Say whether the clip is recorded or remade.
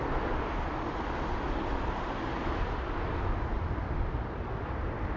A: recorded